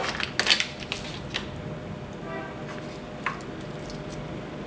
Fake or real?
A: real